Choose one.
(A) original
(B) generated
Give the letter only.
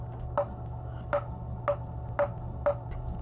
A